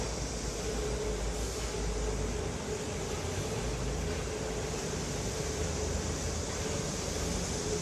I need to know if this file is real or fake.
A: real